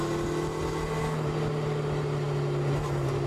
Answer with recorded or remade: recorded